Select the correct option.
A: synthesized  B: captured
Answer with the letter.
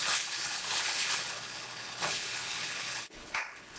A